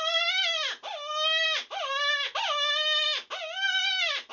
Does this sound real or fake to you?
real